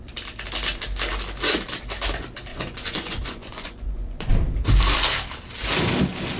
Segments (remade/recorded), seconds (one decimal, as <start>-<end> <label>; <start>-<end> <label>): 0.0-2.5 recorded; 2.5-4.3 remade; 4.3-6.4 recorded